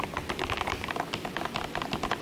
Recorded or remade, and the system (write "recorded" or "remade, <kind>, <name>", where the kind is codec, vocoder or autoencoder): remade, vocoder, BigVGAN v2